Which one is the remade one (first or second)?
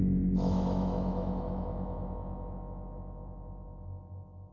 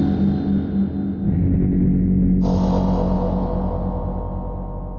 first